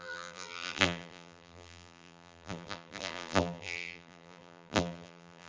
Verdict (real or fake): fake